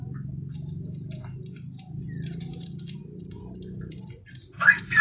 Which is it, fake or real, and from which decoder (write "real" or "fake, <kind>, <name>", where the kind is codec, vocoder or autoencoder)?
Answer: real